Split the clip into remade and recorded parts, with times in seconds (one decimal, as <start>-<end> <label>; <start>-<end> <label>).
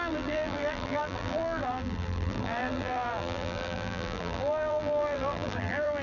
0.0-6.0 remade